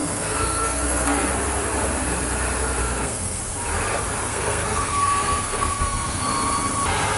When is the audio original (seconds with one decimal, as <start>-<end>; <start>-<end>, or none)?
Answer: 1.3-2.8; 3.4-4.3; 6.3-7.2